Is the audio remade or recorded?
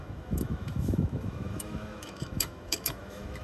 remade